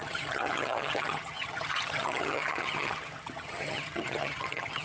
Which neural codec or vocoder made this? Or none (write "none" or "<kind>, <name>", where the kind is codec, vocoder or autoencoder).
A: vocoder, HiFi-GAN